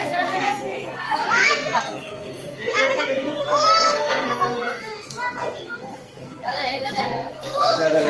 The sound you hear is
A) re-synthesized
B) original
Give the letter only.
A